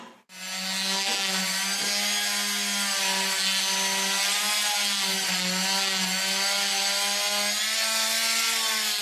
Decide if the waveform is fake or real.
real